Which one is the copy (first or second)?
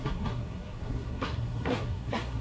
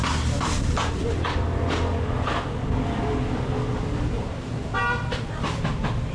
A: first